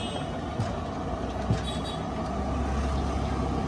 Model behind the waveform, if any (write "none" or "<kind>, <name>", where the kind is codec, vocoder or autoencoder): none